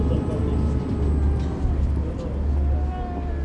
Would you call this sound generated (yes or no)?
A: no